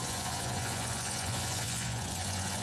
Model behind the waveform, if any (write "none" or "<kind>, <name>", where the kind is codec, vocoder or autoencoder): vocoder, Vocos